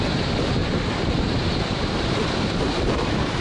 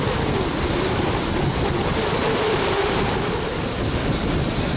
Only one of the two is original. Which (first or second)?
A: second